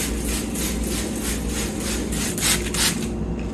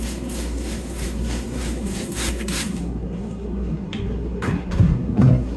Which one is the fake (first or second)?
second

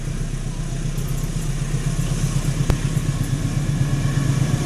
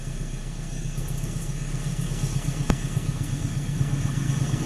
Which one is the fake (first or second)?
second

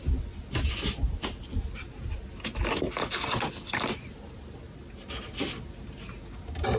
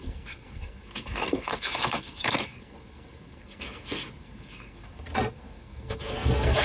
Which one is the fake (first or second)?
second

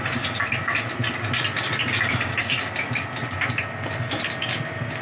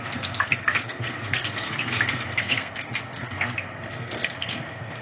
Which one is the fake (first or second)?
second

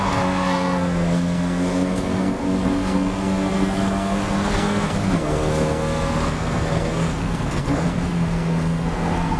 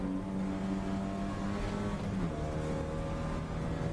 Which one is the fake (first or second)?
first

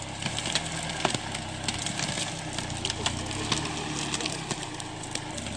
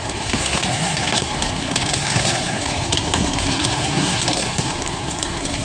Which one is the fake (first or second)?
second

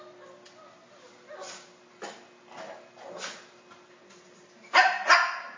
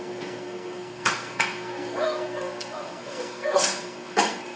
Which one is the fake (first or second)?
second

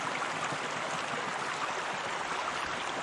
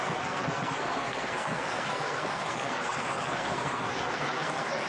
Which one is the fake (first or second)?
second